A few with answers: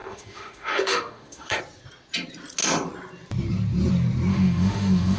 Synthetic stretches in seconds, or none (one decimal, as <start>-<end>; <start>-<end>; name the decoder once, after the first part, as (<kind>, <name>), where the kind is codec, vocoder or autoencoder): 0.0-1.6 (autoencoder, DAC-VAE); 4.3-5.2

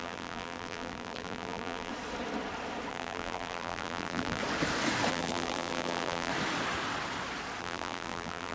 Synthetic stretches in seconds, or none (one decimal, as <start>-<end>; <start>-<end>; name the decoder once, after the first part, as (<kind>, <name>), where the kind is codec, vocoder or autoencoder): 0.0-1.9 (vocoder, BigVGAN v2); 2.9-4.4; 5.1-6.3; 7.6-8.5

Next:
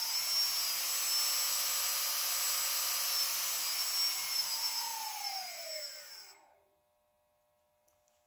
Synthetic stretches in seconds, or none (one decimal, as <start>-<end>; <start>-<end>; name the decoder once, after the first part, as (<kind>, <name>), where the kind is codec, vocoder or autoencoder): none

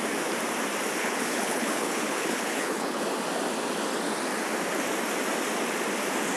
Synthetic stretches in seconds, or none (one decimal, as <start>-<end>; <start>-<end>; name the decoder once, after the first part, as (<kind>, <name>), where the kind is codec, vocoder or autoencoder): 1.0-3.0 (codec, HILCodec)

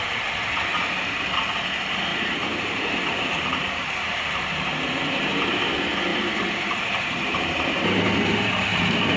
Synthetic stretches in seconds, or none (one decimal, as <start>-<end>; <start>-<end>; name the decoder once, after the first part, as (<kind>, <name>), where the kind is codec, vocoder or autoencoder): 2.1-5.6 (vocoder, BigVGAN v2); 6.1-9.2

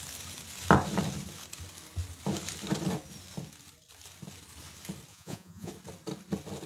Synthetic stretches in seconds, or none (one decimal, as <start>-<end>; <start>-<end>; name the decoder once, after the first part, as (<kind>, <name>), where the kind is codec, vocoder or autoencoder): 5.1-5.7 (vocoder, Vocos)

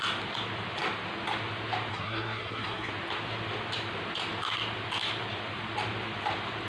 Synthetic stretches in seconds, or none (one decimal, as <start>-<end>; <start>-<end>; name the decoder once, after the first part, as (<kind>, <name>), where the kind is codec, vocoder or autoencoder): 1.9-2.9 (codec, SNAC)